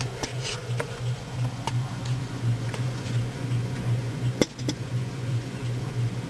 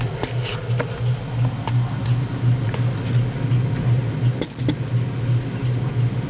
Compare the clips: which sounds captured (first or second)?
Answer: second